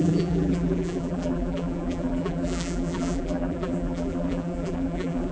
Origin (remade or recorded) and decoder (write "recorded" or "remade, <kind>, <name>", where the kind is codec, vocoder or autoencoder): remade, vocoder, BigVGAN v2